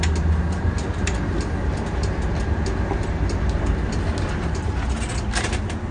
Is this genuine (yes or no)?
yes